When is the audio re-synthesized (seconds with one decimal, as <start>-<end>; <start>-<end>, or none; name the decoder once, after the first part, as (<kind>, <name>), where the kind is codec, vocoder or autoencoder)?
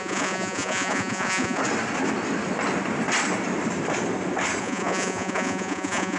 0.0-1.6 (vocoder, Vocos); 4.6-6.2